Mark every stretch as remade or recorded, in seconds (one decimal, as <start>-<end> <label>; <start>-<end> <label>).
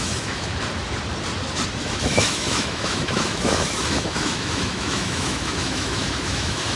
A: 0.0-0.5 remade; 0.5-1.8 recorded; 1.8-6.8 remade